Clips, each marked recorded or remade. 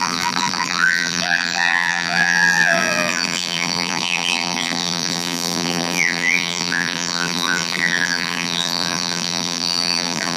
remade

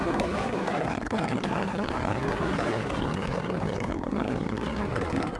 remade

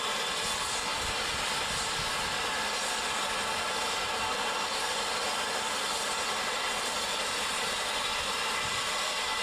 recorded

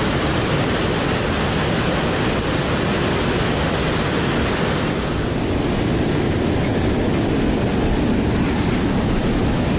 recorded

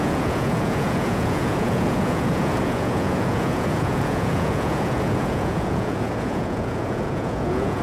remade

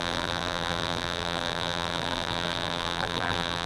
remade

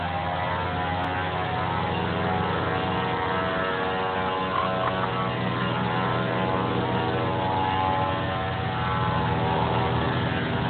recorded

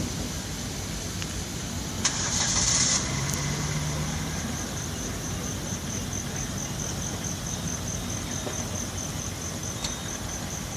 recorded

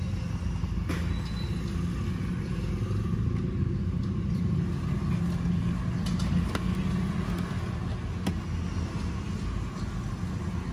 recorded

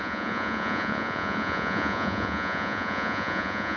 remade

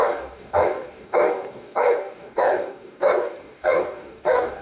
remade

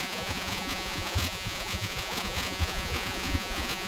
remade